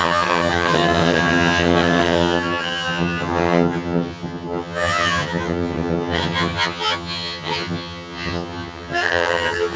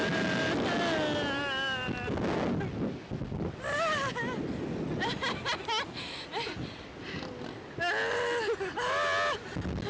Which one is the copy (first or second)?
first